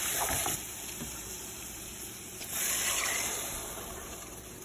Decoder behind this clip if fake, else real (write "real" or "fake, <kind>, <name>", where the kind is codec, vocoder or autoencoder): fake, vocoder, BigVGAN v2